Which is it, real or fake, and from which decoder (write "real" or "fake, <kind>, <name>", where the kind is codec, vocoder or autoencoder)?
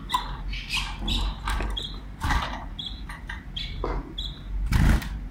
fake, vocoder, BigVGAN v2